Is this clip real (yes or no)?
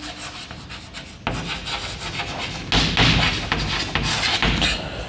yes